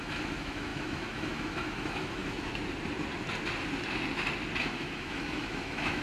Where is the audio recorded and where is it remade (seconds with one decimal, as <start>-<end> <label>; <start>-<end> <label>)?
0.0-2.5 remade; 2.5-4.6 recorded; 4.6-6.0 remade